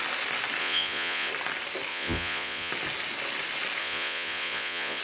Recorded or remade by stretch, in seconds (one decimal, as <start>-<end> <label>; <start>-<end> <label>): 0.0-0.6 recorded; 0.6-1.3 remade; 1.3-1.9 recorded; 1.9-2.7 remade; 2.7-3.8 recorded; 3.8-5.0 remade

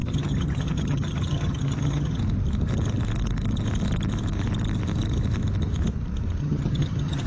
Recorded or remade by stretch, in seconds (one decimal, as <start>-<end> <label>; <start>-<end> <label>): 0.0-2.2 remade; 2.2-6.4 recorded; 6.4-7.3 remade

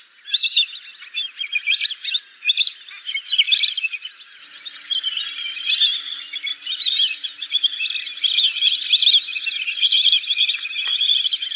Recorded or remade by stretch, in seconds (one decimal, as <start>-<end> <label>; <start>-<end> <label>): 0.0-1.5 recorded; 1.5-2.1 remade; 2.1-6.5 recorded; 6.5-7.7 remade; 7.7-11.6 recorded